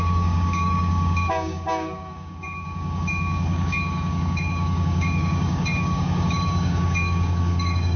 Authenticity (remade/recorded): remade